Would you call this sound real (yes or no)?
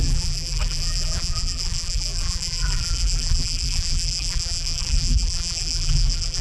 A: no